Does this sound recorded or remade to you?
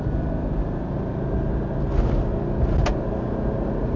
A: recorded